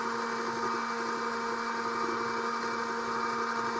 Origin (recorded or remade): recorded